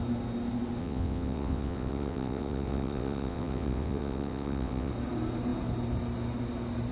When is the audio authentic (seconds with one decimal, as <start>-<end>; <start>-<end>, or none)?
0.0-0.8; 4.9-6.9